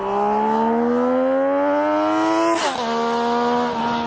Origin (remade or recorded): recorded